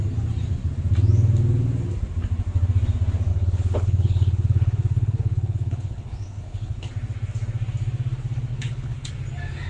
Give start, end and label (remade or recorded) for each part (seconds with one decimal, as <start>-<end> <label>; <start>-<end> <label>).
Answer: 0.0-3.3 recorded; 3.3-6.9 remade; 6.9-8.5 recorded; 8.5-9.1 remade; 9.1-9.7 recorded